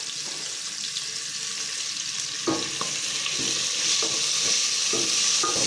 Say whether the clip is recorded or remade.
recorded